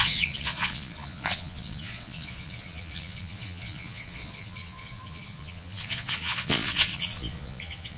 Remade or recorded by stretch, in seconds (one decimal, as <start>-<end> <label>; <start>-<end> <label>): 0.0-8.0 remade